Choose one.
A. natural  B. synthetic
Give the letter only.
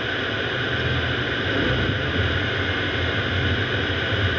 A